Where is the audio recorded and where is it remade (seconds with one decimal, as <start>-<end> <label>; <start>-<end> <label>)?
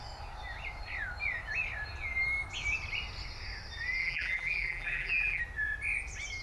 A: 0.0-4.0 recorded; 4.0-5.4 remade; 5.4-6.4 recorded